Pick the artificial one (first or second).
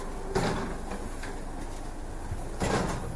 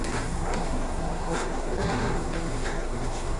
second